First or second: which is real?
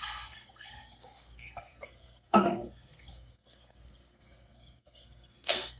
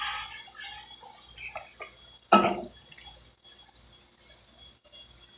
second